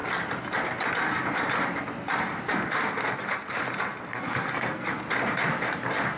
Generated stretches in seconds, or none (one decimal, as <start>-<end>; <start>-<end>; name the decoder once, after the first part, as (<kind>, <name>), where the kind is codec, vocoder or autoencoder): 4.1-4.9 (codec, SNAC)